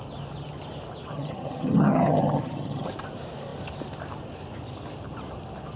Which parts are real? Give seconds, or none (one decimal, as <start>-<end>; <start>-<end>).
0.0-1.1; 2.9-5.8